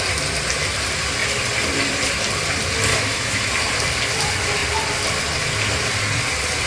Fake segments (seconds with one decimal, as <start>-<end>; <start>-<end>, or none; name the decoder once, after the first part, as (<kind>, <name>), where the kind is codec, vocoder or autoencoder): 2.9-3.5 (autoencoder, DAC-VAE)